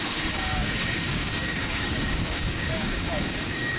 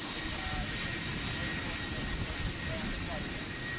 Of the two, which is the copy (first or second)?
first